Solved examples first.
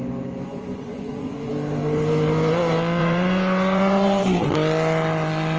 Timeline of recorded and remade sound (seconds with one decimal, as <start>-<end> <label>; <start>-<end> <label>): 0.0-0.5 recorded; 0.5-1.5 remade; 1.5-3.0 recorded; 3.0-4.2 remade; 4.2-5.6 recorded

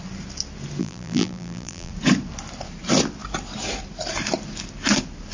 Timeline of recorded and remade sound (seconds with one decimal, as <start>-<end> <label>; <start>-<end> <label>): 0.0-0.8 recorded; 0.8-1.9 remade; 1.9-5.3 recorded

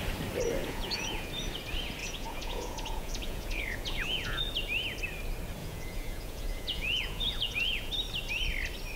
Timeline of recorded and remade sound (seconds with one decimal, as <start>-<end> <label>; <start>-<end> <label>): 0.0-0.6 recorded; 0.6-1.3 remade; 1.3-2.0 recorded; 2.0-4.4 remade; 4.4-5.6 recorded; 5.6-7.9 remade; 7.9-9.0 recorded

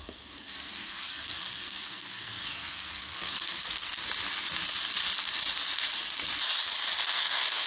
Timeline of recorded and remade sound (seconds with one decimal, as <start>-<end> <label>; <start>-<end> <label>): 0.0-4.0 remade; 4.0-7.0 recorded; 7.0-7.7 remade

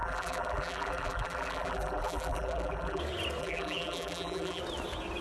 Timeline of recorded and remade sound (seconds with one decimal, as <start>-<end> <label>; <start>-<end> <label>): 0.0-3.0 remade; 3.0-3.4 recorded; 3.4-4.6 remade; 4.6-5.2 recorded

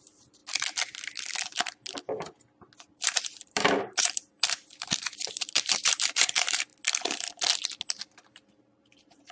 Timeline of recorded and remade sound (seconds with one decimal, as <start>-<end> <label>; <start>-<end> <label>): 0.0-0.4 remade; 0.4-2.9 recorded; 2.9-6.7 remade; 6.7-8.2 recorded; 8.2-9.3 remade

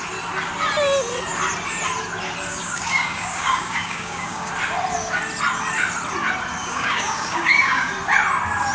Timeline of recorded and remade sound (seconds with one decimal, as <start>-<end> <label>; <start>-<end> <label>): 0.0-2.5 recorded; 2.5-4.5 remade; 4.5-6.6 recorded; 6.6-7.9 remade; 7.9-8.7 recorded